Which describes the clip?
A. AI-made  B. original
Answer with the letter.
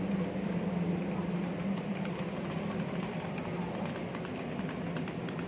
B